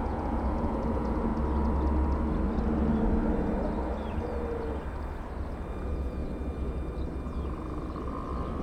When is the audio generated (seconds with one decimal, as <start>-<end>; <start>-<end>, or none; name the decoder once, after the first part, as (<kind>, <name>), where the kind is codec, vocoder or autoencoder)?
0.0-1.3 (vocoder, Vocos); 5.8-6.2

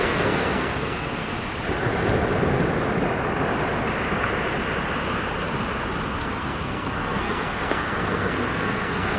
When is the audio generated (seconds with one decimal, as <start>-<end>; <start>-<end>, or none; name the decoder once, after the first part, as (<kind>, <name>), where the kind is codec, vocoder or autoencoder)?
0.0-1.3 (codec, SNAC); 6.2-9.2

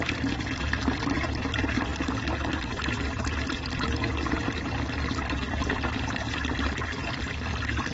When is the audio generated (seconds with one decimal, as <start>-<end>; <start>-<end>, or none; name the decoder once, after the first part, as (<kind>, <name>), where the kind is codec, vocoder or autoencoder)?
0.0-1.9 (vocoder, BigVGAN v2); 3.1-7.9

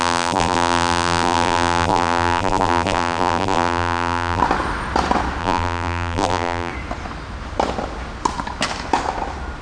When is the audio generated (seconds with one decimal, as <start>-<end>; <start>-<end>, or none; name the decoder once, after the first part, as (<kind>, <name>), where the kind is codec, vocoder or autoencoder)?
0.0-4.4 (vocoder, BigVGAN v2); 5.4-6.7

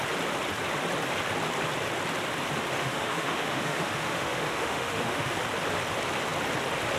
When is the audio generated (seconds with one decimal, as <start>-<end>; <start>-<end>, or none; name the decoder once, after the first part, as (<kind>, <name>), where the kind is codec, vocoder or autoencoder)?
2.8-5.4 (autoencoder, DAC-VAE)

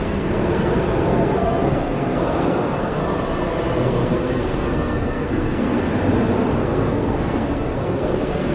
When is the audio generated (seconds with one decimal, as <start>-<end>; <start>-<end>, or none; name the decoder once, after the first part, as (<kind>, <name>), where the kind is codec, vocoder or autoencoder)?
0.0-3.0 (codec, SNAC); 3.8-5.9; 6.5-8.5